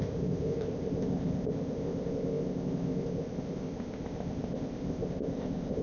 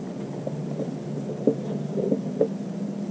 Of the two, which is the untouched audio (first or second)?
second